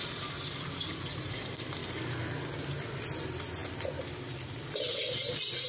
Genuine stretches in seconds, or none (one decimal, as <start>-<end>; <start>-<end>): 0.0-5.7